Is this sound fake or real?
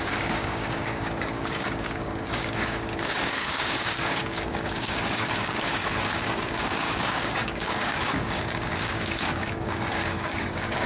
fake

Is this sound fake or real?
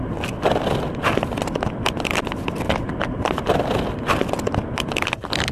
real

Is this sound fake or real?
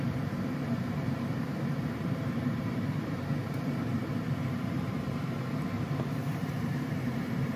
fake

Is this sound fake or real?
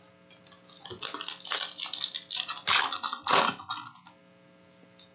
real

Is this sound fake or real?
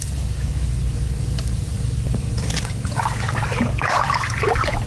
fake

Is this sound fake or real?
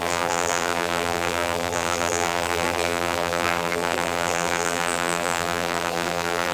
fake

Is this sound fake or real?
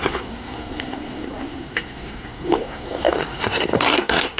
fake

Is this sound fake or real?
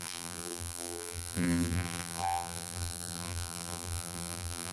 fake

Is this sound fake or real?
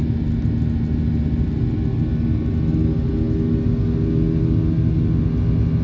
real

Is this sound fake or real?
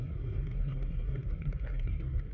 fake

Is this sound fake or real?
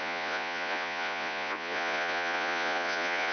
fake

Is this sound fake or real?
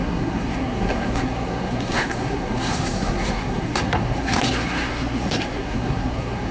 fake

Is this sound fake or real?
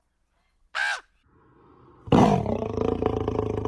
real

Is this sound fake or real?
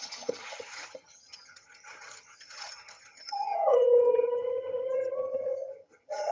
fake